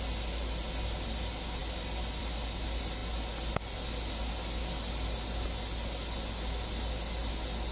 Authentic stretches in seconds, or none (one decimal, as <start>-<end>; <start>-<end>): 0.0-7.7